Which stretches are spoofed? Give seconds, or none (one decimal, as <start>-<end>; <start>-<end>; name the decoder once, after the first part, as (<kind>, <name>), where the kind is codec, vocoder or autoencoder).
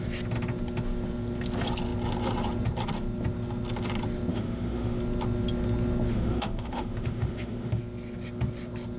4.3-5.0 (autoencoder, DAC-VAE); 6.1-7.8